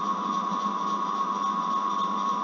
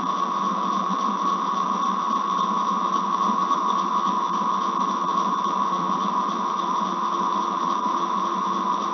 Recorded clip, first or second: first